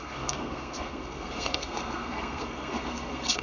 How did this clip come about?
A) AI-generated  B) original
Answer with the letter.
A